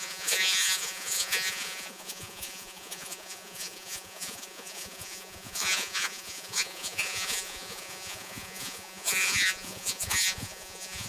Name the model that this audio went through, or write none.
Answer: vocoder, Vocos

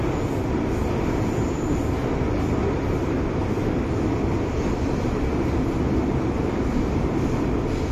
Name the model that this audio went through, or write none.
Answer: none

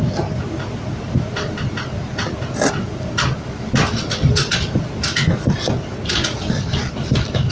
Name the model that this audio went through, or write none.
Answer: none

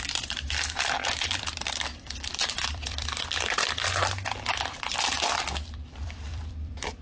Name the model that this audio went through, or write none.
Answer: vocoder, BigVGAN v2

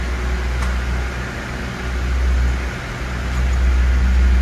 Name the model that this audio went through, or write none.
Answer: none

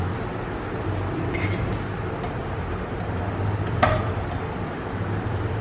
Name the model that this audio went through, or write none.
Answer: none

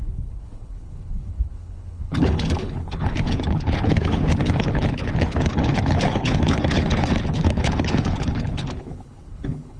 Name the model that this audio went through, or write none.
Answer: codec, HILCodec